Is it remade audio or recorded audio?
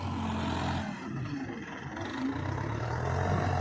recorded